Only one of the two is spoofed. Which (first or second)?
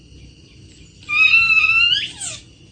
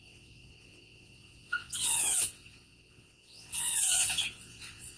second